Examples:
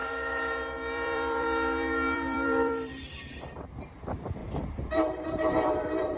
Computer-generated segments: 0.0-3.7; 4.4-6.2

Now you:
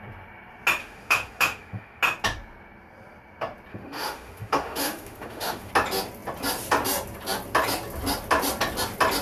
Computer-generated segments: 0.8-2.0; 3.7-5.7

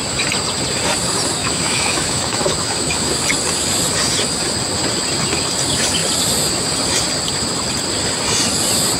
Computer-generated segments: 1.4-3.2

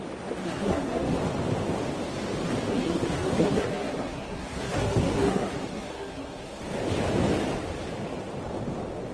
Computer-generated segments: 0.4-1.2; 2.7-6.6